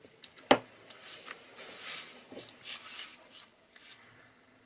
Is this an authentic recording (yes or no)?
yes